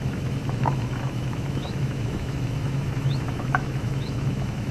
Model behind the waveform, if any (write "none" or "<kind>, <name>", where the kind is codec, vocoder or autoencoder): autoencoder, DAC-VAE